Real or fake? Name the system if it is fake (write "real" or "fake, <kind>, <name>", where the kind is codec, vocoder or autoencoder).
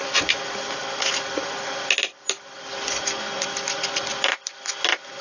real